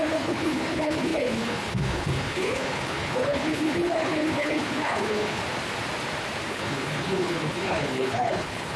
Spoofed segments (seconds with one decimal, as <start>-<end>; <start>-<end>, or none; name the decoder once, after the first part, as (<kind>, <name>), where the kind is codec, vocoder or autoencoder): 0.0-5.4 (codec, HILCodec); 6.5-8.8